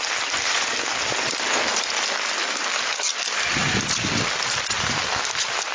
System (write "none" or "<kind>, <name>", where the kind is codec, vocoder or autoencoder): none